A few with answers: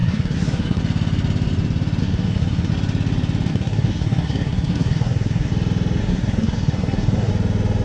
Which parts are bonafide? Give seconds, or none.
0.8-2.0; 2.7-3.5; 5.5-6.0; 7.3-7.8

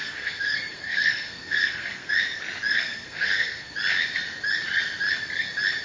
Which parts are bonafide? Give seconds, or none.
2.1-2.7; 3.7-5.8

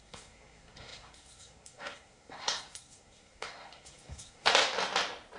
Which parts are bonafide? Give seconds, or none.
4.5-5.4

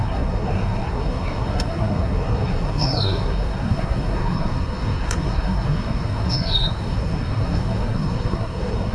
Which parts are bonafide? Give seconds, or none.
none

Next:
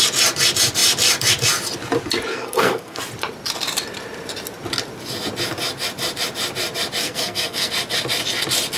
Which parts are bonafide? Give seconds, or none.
0.0-2.3; 3.0-7.0; 7.7-8.8

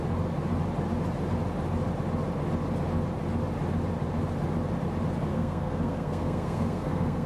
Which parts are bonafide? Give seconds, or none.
0.0-5.3